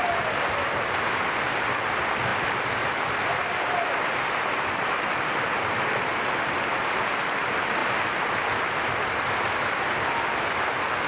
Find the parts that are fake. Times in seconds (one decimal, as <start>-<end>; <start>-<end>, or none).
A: none

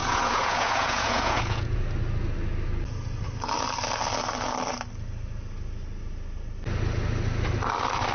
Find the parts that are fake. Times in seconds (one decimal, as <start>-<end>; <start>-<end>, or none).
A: 0.0-1.8

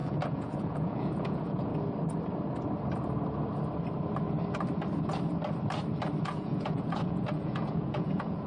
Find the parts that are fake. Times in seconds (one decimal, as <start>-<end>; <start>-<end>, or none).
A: 0.0-1.7; 6.2-8.5

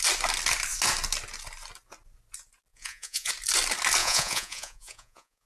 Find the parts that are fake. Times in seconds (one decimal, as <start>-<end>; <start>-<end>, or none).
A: 2.7-3.3; 4.0-5.5

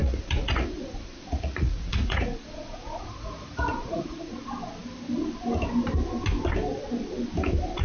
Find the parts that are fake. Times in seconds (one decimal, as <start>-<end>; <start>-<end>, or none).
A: 0.0-4.3

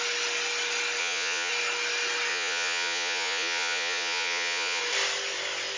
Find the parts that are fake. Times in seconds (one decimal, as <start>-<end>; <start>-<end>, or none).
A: 1.0-1.5; 2.3-4.8

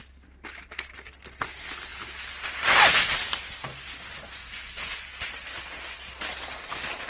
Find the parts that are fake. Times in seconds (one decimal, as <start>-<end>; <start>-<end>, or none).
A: 4.4-5.1